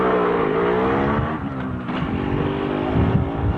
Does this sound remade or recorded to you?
recorded